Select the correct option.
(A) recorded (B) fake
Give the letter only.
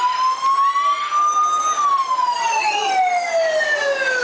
A